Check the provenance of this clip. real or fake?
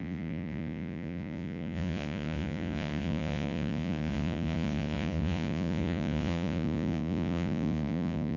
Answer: fake